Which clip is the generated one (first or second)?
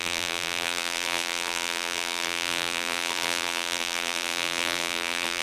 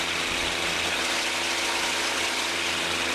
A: first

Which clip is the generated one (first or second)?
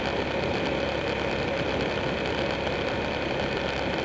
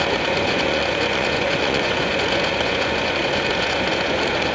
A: second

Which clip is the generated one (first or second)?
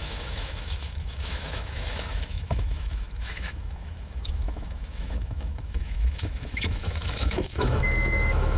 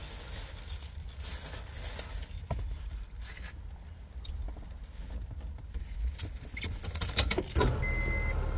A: first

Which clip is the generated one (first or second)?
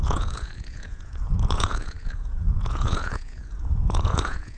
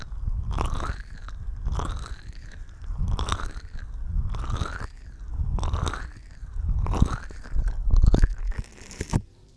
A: first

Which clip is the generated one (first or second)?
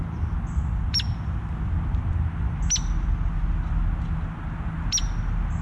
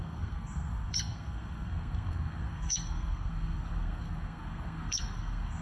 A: second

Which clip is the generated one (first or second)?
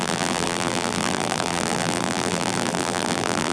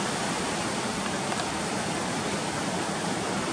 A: first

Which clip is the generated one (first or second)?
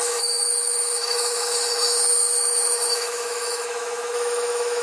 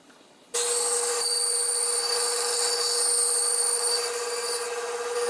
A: first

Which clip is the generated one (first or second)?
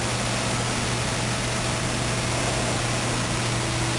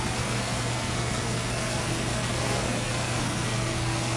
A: second